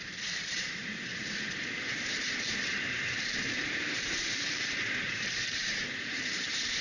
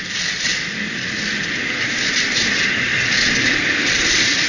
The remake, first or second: first